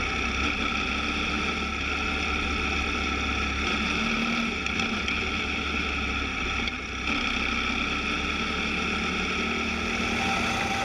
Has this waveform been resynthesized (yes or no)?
no